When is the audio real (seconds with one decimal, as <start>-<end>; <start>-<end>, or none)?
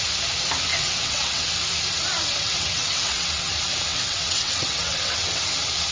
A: 0.0-0.7; 1.5-2.3; 3.5-3.9; 5.4-5.9